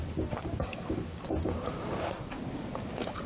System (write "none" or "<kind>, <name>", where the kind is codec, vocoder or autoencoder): none